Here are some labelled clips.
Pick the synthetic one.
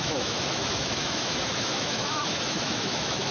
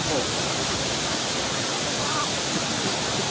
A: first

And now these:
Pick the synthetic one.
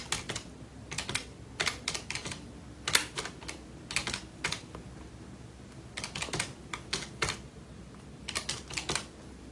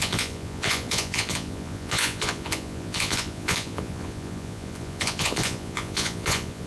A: second